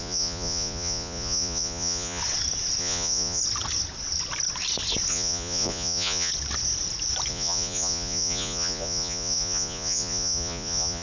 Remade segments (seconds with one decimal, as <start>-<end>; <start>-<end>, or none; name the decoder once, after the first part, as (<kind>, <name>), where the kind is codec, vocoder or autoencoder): 0.0-2.2 (vocoder, Vocos); 2.8-3.4; 5.1-6.3; 7.3-11.0